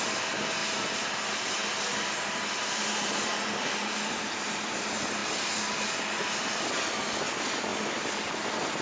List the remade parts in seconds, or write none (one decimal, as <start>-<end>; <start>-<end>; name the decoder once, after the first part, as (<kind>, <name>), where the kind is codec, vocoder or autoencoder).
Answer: none